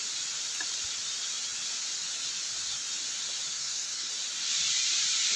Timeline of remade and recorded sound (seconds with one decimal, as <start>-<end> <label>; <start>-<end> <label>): 0.0-3.5 recorded; 3.5-4.1 remade; 4.1-5.4 recorded